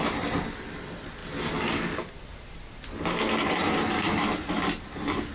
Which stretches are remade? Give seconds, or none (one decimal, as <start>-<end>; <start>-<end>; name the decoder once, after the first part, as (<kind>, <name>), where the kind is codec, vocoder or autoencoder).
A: none